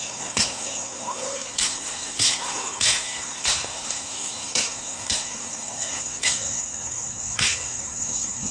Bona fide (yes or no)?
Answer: no